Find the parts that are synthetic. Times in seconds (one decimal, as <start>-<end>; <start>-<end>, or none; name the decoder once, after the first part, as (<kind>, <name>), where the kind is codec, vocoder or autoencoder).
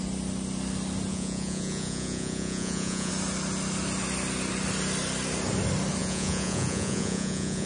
1.1-3.1 (vocoder, Vocos); 6.0-7.7